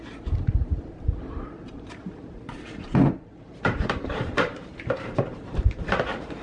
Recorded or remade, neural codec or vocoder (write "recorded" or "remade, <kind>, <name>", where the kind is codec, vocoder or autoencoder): remade, vocoder, BigVGAN v2